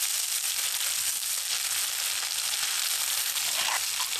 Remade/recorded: recorded